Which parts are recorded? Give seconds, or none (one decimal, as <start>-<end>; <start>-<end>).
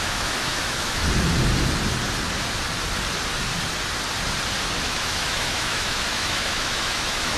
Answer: 1.0-4.8